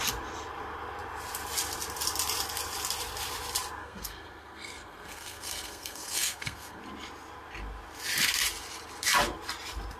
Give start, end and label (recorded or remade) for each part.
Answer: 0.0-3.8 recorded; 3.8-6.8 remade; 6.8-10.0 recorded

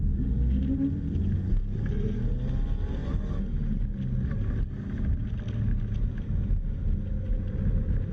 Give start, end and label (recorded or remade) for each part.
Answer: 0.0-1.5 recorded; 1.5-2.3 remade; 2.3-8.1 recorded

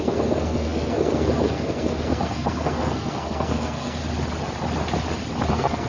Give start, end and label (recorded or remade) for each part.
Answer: 0.0-4.0 remade; 4.0-5.5 recorded; 5.5-5.9 remade

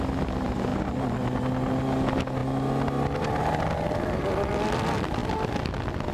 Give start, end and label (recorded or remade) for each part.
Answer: 0.0-6.1 recorded

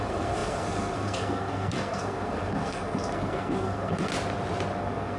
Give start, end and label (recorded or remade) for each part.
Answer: 0.0-4.1 remade; 4.1-4.8 recorded; 4.8-5.2 remade